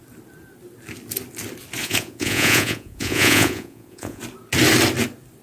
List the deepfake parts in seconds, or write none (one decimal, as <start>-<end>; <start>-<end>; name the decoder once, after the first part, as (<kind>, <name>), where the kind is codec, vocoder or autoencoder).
1.8-4.2 (vocoder, Vocos)